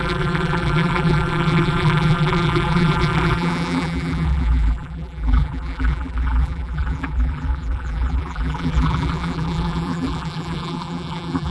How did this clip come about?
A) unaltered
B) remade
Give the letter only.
B